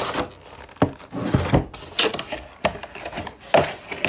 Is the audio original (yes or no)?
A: yes